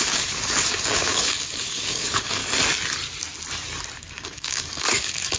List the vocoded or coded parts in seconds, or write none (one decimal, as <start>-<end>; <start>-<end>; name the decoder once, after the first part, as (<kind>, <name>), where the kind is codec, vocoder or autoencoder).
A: 0.0-2.4 (codec, DAC); 4.0-5.4